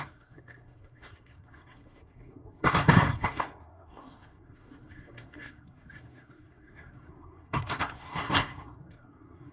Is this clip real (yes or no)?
no